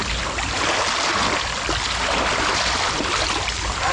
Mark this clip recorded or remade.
recorded